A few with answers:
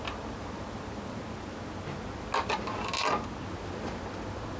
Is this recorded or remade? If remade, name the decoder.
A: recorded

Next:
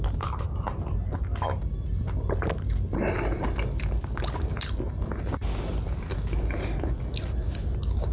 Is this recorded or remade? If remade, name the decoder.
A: recorded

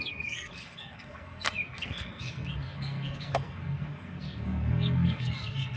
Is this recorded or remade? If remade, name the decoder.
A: remade, codec, SNAC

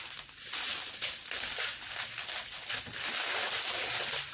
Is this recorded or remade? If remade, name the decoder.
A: recorded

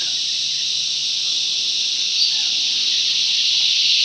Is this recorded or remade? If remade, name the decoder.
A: recorded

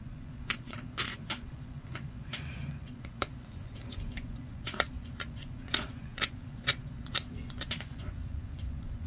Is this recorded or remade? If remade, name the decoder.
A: remade, vocoder, Vocos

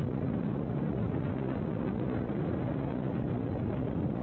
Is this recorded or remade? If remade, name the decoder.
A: remade, vocoder, Vocos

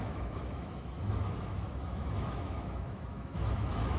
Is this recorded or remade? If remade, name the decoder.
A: remade, autoencoder, DAC-VAE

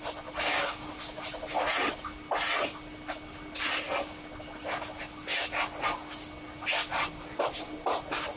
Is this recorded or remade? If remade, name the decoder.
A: recorded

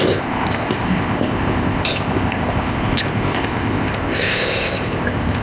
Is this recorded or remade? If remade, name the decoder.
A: remade, codec, ZipCodec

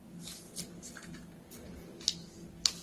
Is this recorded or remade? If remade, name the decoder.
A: recorded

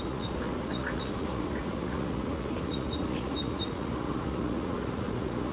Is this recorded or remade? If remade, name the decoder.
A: remade, vocoder, Vocos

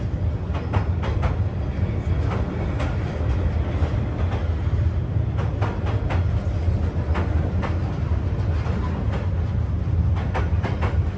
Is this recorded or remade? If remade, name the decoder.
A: recorded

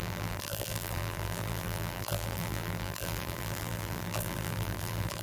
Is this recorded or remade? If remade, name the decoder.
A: remade, vocoder, BigVGAN v2